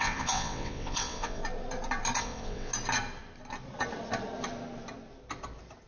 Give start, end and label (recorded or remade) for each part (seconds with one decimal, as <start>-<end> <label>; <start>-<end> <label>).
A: 0.0-1.4 remade; 1.4-2.2 recorded; 2.2-2.7 remade; 2.7-5.9 recorded